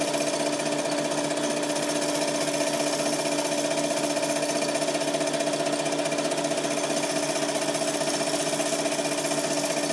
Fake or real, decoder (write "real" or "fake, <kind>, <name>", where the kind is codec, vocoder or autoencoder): real